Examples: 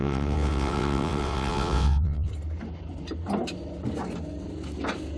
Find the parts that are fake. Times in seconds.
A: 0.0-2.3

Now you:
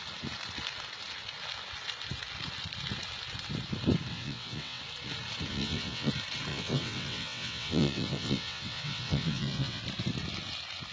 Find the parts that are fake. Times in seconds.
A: 4.1-4.8; 5.5-6.1; 6.5-9.8

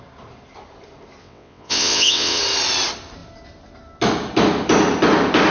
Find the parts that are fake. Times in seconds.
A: 1.2-2.4

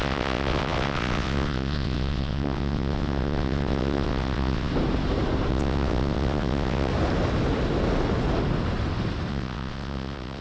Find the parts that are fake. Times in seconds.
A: 0.0-4.7; 5.5-6.9; 9.3-10.4